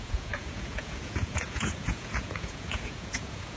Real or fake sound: fake